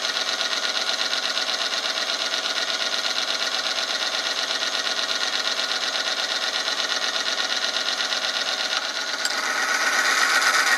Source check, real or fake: real